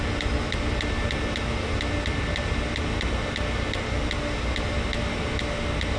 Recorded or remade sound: recorded